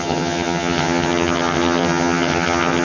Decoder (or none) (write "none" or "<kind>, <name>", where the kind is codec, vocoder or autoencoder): vocoder, HiFi-GAN